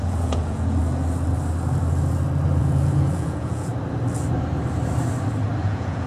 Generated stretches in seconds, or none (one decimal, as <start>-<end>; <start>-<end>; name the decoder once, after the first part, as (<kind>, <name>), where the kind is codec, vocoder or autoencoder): 0.0-0.8 (vocoder, Vocos); 2.6-3.7; 5.6-6.1